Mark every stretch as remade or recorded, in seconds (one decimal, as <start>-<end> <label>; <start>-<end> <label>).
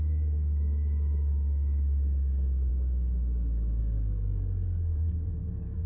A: 0.0-2.7 remade; 2.7-3.8 recorded; 3.8-5.9 remade